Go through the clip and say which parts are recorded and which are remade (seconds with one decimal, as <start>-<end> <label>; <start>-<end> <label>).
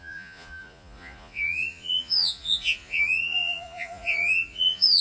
0.0-5.0 remade